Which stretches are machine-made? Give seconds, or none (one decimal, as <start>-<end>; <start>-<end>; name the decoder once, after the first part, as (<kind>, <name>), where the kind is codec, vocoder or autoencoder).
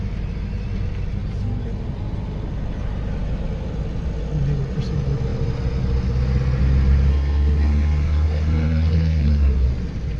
7.1-9.7 (codec, SNAC)